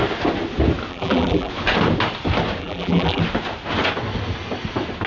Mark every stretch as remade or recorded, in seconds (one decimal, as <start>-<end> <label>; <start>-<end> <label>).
0.0-0.9 recorded; 0.9-1.5 remade; 1.5-2.6 recorded; 2.6-3.2 remade; 3.2-5.1 recorded